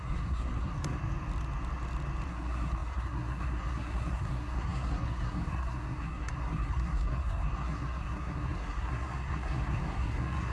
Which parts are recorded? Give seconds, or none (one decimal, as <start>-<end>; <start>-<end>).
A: 1.0-2.3